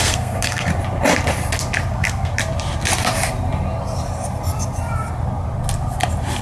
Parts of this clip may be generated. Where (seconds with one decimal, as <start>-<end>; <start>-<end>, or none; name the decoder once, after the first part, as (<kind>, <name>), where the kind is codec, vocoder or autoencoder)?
0.0-0.7 (codec, SNAC); 1.9-2.3